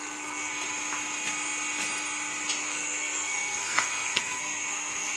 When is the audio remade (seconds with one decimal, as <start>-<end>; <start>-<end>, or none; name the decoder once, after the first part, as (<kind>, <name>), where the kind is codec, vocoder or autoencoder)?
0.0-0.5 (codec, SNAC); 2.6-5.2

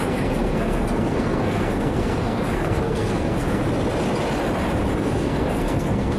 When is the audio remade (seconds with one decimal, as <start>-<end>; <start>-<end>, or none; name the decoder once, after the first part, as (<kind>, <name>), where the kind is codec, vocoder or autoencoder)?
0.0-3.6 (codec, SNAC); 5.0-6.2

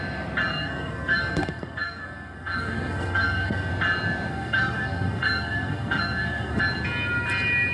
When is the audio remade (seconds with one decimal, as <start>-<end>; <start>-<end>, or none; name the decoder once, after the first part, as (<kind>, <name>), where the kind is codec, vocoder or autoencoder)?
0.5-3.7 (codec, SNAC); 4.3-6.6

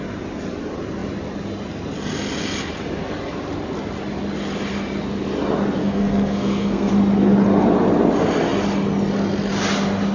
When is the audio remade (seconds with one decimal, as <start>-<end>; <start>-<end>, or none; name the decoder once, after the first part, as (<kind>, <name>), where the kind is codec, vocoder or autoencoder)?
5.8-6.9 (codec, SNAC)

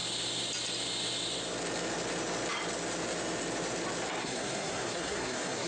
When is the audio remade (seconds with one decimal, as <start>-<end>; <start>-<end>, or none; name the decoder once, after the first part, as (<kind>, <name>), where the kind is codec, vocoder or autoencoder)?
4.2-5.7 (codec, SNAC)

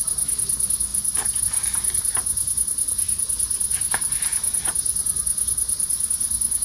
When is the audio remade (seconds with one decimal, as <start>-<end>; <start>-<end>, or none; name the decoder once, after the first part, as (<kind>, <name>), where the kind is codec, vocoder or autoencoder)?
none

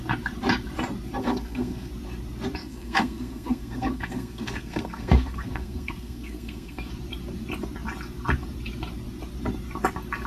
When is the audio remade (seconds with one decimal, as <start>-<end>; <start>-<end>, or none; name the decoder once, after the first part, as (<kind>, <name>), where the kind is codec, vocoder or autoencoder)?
1.2-1.9 (codec, SNAC); 2.6-6.9